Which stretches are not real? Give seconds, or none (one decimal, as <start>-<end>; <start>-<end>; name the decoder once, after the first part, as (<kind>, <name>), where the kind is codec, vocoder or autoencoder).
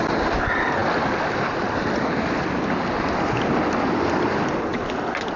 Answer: none